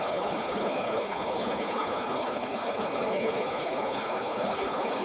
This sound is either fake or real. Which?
fake